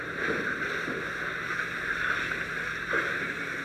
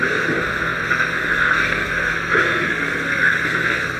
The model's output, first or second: second